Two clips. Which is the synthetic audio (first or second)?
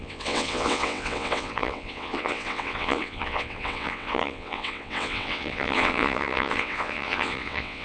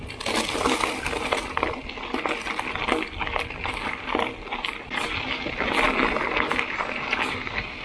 first